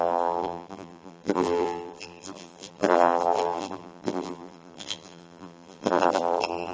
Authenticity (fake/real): fake